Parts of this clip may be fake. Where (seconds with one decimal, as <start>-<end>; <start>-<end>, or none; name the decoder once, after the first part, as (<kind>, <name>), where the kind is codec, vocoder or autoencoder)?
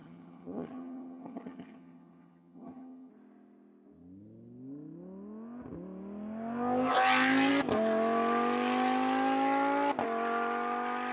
0.0-3.1 (vocoder, HiFi-GAN)